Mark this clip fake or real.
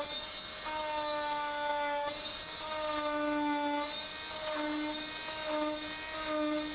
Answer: real